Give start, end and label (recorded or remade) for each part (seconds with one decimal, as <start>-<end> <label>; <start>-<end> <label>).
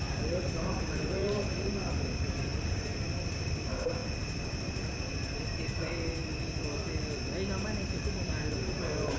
0.0-4.0 remade; 4.0-5.4 recorded; 5.4-6.2 remade; 6.2-7.8 recorded; 7.8-9.2 remade